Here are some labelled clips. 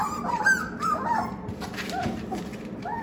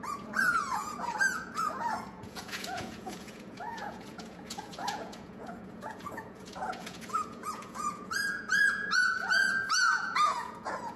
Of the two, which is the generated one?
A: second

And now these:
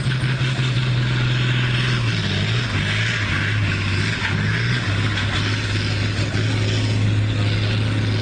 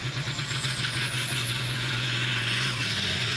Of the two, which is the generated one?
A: second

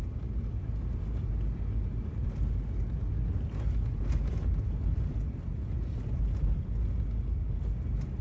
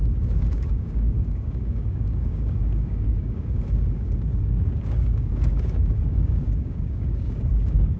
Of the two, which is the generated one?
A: second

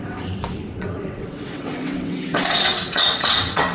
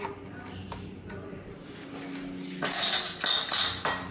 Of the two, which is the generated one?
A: first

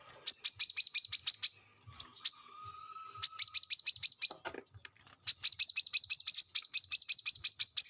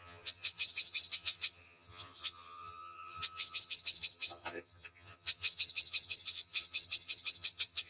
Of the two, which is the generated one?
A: second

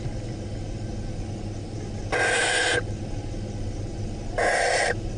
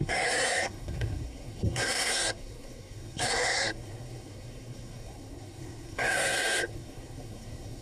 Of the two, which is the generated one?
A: second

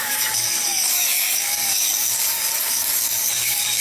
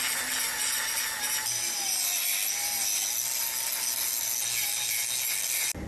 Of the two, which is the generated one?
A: first